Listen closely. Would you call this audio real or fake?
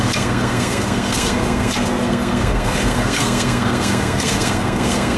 fake